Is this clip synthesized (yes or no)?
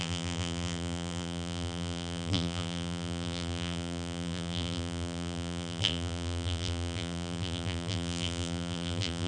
yes